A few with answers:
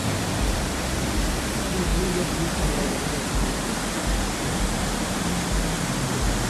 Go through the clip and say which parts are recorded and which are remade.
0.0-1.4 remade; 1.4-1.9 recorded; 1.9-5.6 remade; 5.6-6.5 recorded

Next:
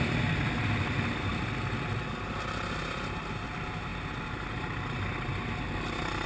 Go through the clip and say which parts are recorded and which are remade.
0.0-6.3 recorded